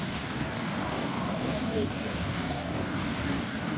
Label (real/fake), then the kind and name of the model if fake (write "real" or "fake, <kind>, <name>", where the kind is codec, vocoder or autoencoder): fake, codec, DAC